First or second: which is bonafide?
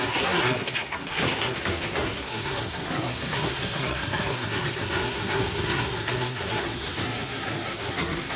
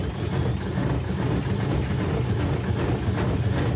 second